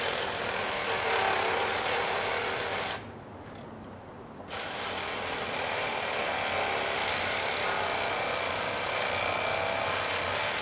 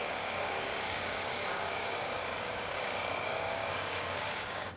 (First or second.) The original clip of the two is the first